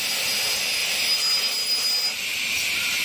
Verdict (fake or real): real